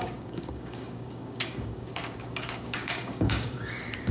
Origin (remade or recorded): remade